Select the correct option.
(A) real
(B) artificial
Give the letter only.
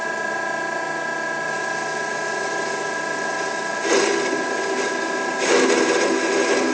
A